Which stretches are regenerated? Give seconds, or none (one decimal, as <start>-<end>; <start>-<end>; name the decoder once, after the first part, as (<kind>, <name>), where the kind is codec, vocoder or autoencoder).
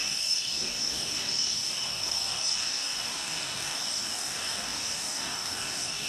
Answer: 0.0-6.1 (codec, DAC)